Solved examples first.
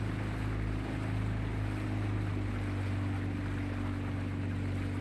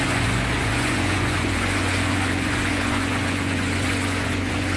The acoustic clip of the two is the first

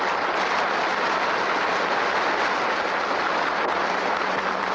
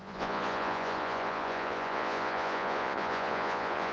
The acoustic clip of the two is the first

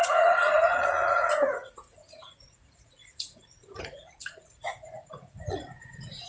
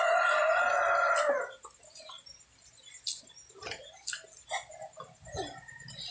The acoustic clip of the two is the second